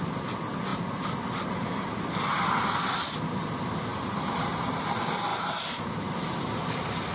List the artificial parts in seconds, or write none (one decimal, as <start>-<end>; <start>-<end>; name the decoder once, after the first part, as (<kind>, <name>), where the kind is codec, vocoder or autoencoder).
3.9-4.7 (vocoder, BigVGAN v2); 5.3-7.1